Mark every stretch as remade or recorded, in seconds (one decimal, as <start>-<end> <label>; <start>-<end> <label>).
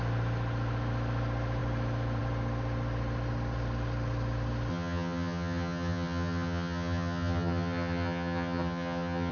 0.0-4.7 recorded; 4.7-9.3 remade